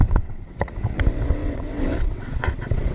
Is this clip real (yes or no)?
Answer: no